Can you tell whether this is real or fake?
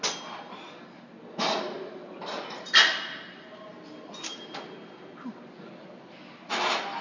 real